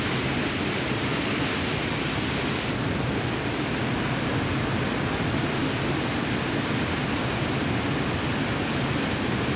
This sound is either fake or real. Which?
real